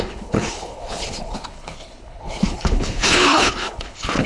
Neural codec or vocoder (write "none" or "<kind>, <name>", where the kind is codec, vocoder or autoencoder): codec, HILCodec